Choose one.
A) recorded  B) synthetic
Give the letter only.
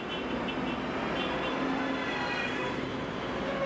A